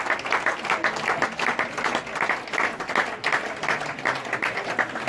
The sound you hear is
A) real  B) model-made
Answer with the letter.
A